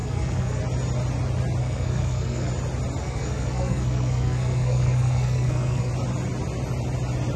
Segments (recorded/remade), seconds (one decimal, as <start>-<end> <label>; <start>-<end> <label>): 0.0-0.6 remade; 0.6-1.6 recorded; 1.6-2.5 remade; 2.5-3.0 recorded; 3.0-5.9 remade; 5.9-7.4 recorded